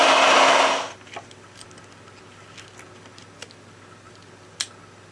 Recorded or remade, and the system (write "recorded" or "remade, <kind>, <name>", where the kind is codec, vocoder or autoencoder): recorded